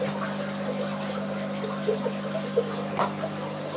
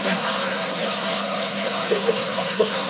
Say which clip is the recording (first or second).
first